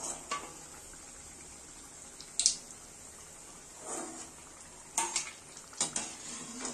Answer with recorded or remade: recorded